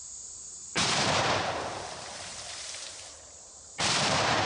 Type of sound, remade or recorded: remade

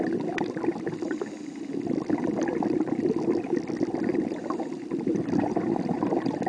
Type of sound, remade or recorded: remade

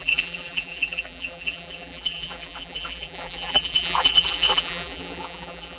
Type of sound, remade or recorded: remade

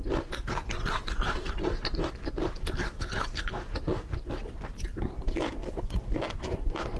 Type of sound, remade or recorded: recorded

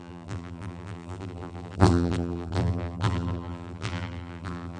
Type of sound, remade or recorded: remade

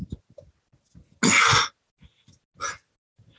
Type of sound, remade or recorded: recorded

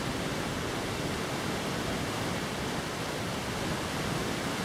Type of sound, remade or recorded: recorded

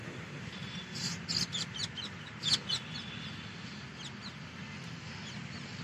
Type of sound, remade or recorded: recorded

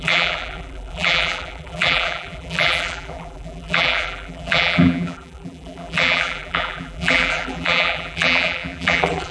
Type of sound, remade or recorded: remade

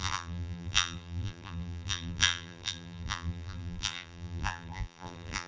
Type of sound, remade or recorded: remade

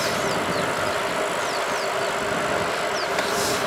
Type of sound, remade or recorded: recorded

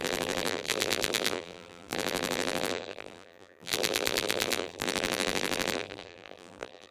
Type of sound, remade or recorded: remade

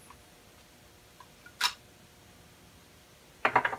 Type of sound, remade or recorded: recorded